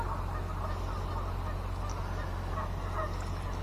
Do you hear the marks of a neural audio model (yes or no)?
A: no